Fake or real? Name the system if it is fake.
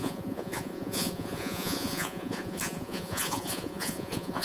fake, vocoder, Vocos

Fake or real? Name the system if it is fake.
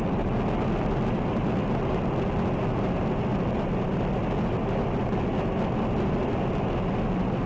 real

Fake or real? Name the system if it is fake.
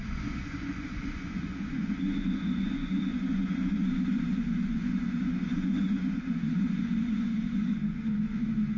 fake, vocoder, Vocos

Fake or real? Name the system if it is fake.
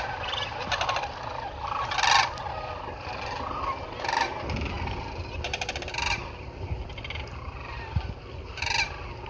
real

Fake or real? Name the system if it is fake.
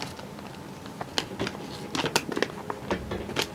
real